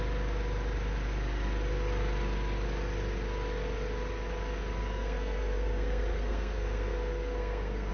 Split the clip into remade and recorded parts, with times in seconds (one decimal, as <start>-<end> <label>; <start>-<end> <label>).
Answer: 0.0-4.8 recorded; 4.8-7.9 remade